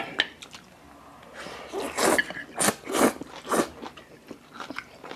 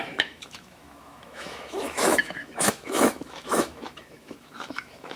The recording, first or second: first